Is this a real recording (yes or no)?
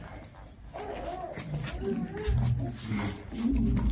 yes